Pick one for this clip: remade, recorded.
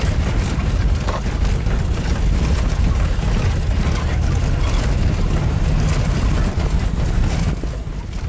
recorded